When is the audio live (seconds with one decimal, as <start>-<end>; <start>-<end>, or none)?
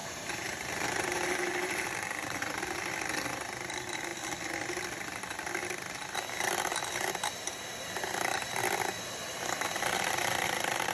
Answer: 2.6-10.9